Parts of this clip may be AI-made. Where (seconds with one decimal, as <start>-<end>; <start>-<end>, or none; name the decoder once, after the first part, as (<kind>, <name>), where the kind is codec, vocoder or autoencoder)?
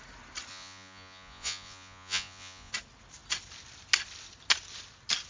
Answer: 0.5-2.7 (vocoder, Vocos)